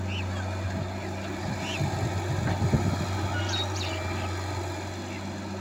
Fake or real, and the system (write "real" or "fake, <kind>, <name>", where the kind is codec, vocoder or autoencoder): real